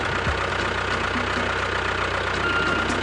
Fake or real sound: real